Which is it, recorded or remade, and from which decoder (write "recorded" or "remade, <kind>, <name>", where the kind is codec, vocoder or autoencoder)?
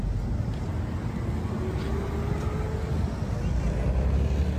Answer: recorded